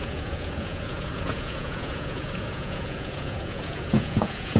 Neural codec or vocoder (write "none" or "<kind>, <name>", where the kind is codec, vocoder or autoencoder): vocoder, Vocos